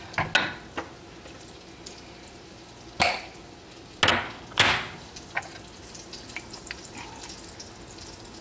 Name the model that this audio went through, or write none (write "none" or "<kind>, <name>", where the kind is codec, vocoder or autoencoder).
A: none